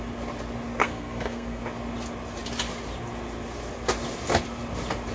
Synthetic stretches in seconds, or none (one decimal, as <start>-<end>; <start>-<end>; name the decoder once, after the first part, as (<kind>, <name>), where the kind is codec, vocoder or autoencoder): 0.8-1.6 (codec, SNAC)